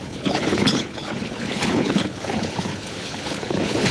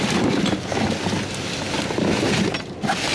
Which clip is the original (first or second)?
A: second